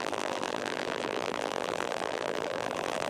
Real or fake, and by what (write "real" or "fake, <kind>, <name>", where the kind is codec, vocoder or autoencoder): fake, vocoder, BigVGAN v2